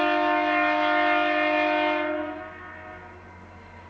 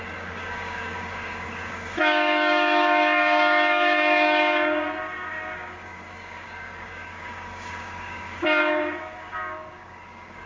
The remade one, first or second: second